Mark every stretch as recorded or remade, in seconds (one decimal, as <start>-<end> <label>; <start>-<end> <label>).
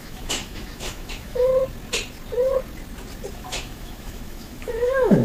0.0-1.5 remade; 1.5-3.3 recorded; 3.3-5.2 remade